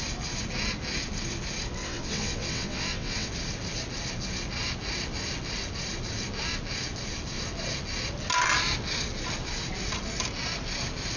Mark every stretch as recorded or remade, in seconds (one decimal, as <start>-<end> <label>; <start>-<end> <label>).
0.0-1.8 recorded; 1.8-3.3 remade; 3.3-11.2 recorded